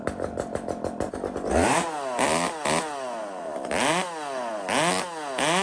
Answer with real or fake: real